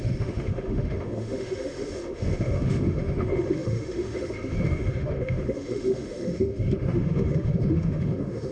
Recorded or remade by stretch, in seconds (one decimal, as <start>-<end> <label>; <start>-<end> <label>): 0.0-8.5 remade

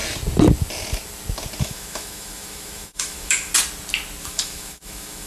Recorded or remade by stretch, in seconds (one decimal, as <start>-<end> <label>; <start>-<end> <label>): 0.0-1.6 recorded; 1.6-3.5 remade; 3.5-4.2 recorded; 4.2-5.3 remade

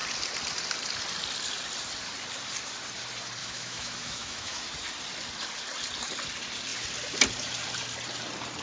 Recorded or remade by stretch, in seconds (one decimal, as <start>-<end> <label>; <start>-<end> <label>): 0.0-3.4 recorded; 3.4-4.7 remade; 4.7-8.6 recorded

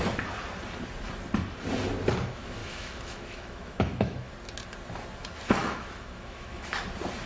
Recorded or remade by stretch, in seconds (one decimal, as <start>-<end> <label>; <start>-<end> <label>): 0.0-2.6 recorded; 2.6-4.3 remade; 4.3-5.6 recorded; 5.6-6.8 remade; 6.8-7.3 recorded